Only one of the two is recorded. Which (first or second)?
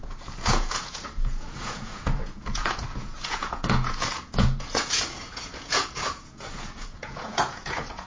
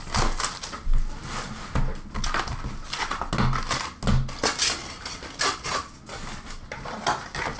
second